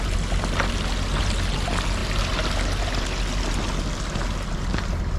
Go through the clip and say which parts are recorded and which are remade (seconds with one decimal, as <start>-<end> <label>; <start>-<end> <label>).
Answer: 0.0-5.2 recorded